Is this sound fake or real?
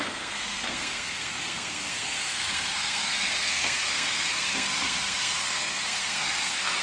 fake